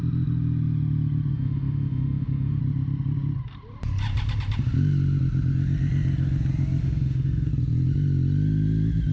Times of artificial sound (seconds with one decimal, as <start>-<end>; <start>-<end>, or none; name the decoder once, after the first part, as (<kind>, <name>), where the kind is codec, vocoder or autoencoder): 1.3-2.6 (autoencoder, DAC-VAE); 6.8-7.5